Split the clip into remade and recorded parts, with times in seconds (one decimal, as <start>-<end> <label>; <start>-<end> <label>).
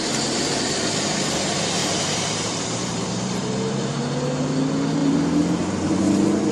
0.0-1.8 recorded; 1.8-4.0 remade; 4.0-5.0 recorded; 5.0-6.0 remade; 6.0-6.5 recorded